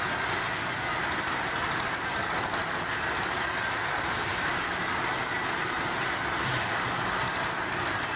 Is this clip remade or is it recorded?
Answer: recorded